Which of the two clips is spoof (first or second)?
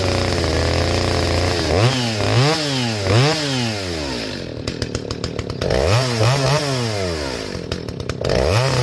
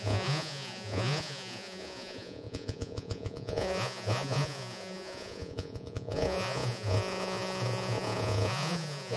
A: second